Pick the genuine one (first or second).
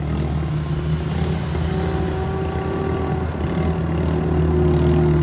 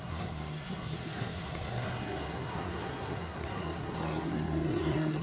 first